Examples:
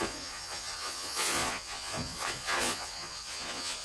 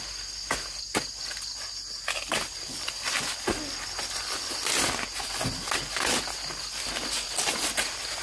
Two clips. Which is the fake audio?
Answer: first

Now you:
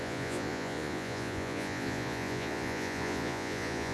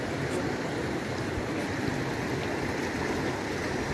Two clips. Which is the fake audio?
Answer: first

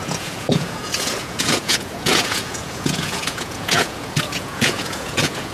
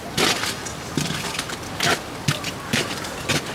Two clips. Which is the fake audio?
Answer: first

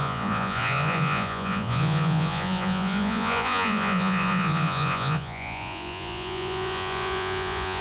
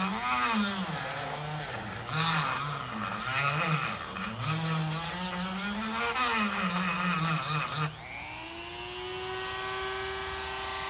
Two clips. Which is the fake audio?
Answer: first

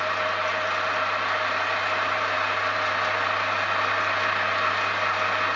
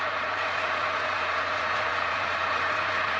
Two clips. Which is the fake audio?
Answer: second